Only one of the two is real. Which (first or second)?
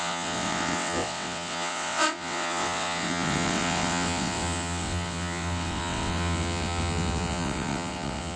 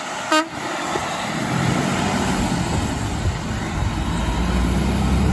second